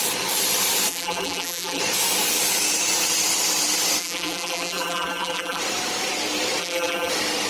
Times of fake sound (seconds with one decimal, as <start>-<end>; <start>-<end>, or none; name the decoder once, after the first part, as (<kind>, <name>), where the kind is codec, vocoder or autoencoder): 0.9-1.8 (vocoder, BigVGAN v2); 4.0-5.6; 6.6-7.1